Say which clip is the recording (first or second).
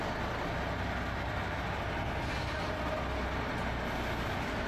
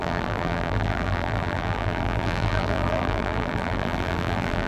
first